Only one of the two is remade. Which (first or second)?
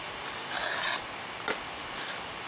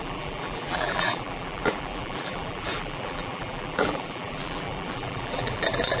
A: second